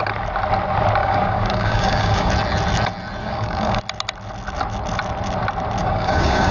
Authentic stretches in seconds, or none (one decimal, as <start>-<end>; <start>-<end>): 0.0-1.0; 2.3-3.2; 3.8-5.8